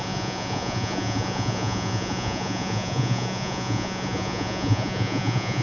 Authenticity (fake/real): fake